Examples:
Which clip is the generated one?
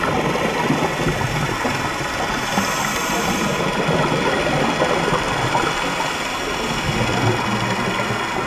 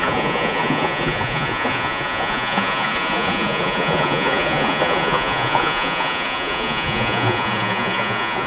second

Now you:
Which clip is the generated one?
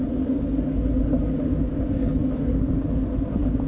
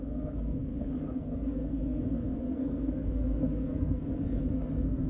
second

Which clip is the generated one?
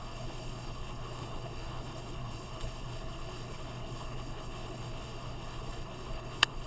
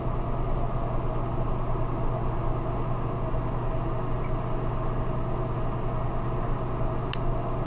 first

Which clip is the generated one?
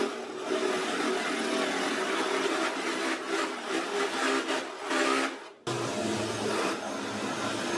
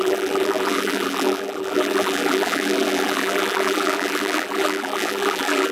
second